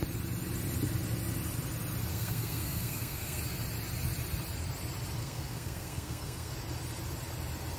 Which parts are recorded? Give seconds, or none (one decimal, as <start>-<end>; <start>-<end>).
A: 0.0-2.1; 3.4-5.2; 6.5-7.8